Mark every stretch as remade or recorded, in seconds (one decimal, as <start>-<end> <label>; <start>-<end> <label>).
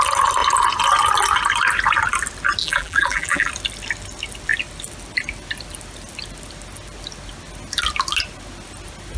0.0-2.6 recorded; 2.6-3.5 remade; 3.5-9.2 recorded